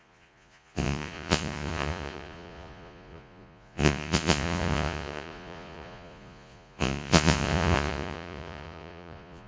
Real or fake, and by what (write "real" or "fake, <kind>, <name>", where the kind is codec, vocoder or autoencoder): fake, vocoder, Vocos